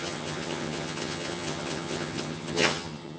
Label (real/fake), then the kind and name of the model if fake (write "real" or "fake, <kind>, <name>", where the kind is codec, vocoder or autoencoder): fake, vocoder, HiFi-GAN